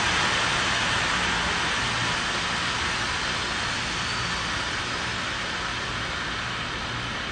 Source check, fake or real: real